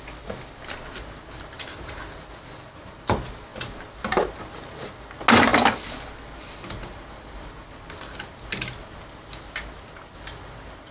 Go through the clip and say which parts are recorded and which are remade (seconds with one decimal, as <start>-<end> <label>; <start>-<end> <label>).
0.0-10.9 recorded